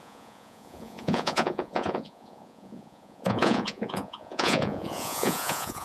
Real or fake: fake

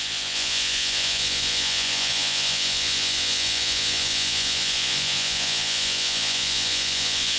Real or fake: fake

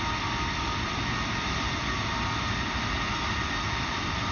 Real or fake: real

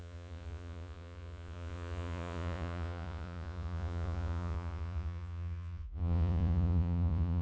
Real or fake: fake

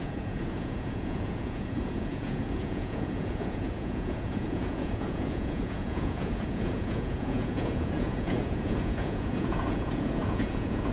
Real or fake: fake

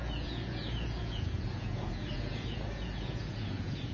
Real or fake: fake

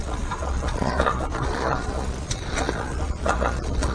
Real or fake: fake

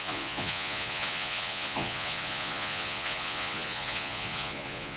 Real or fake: fake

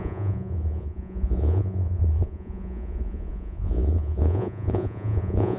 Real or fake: fake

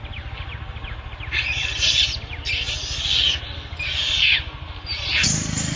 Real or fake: real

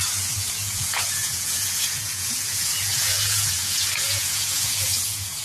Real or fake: fake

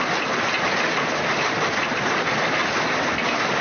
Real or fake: real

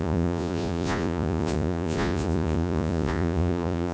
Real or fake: fake